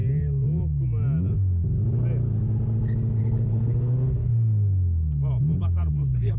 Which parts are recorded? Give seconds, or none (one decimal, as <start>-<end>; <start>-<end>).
0.0-3.2; 4.3-5.9